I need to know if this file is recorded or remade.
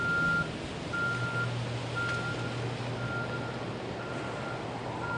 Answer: recorded